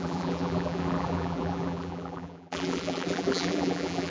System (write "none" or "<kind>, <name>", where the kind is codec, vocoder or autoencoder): vocoder, BigVGAN v2